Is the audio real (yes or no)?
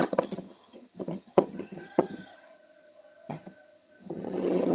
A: no